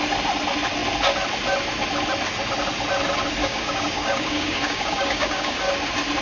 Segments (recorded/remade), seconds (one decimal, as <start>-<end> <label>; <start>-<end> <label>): 0.0-3.4 recorded; 3.4-5.6 remade; 5.6-6.2 recorded